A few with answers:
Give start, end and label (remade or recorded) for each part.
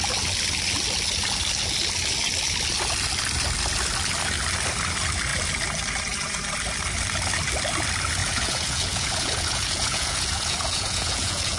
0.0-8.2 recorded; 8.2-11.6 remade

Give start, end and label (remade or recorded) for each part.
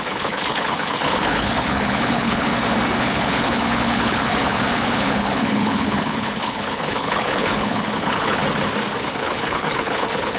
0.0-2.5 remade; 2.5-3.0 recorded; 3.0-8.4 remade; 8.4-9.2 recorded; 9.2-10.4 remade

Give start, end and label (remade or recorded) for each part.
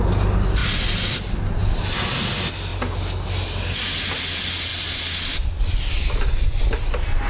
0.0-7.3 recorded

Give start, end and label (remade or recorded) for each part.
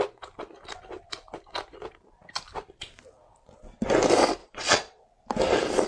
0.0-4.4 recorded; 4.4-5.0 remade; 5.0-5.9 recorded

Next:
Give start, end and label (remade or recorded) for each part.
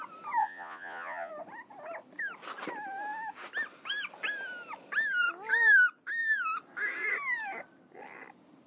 0.0-0.4 recorded; 0.4-1.3 remade; 1.3-8.7 recorded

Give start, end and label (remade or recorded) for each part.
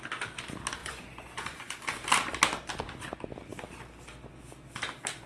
0.0-0.8 recorded; 0.8-1.8 remade; 1.8-5.3 recorded